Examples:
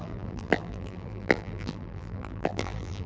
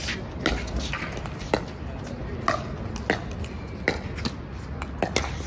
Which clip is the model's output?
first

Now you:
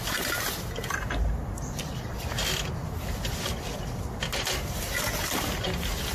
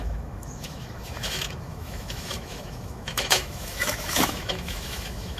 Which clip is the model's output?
second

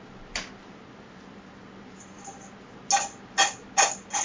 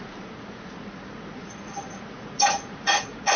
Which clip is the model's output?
second